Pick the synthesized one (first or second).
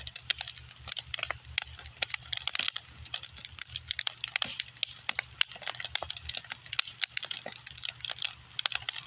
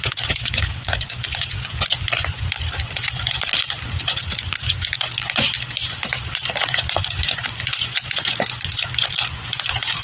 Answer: second